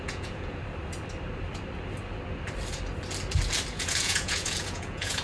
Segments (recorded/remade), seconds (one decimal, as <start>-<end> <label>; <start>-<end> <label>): 0.0-0.6 remade; 0.6-3.7 recorded; 3.7-5.2 remade